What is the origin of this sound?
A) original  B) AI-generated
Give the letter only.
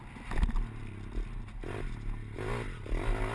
A